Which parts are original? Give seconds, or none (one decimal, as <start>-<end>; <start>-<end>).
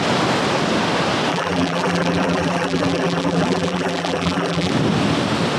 0.0-1.3; 4.7-5.6